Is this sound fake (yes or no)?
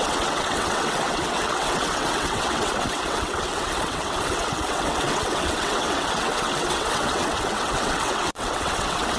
yes